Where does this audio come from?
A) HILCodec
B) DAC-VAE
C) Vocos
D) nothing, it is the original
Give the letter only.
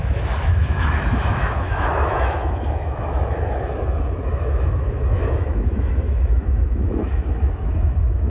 B